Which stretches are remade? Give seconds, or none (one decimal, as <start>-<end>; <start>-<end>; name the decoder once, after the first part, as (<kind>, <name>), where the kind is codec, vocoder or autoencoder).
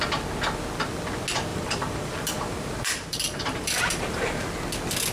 1.5-4.6 (vocoder, BigVGAN v2)